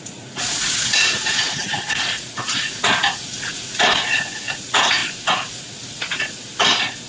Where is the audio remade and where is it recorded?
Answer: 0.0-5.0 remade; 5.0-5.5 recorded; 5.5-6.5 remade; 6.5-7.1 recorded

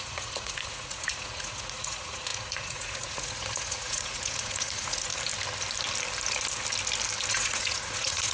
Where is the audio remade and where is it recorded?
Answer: 0.0-5.1 remade; 5.1-7.3 recorded; 7.3-8.3 remade

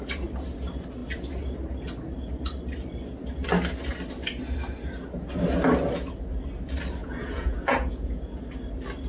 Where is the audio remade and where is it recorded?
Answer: 0.0-7.0 recorded; 7.0-8.4 remade; 8.4-9.1 recorded

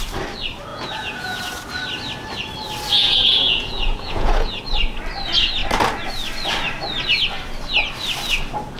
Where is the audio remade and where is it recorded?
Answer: 0.0-0.7 recorded; 0.7-1.4 remade; 1.4-2.9 recorded; 2.9-4.6 remade; 4.6-8.8 recorded

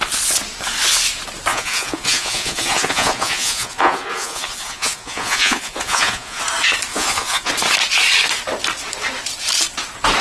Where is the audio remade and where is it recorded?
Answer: 0.0-1.5 recorded; 1.5-6.4 remade; 6.4-6.9 recorded; 6.9-7.5 remade; 7.5-10.2 recorded